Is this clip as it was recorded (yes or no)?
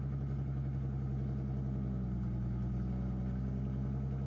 yes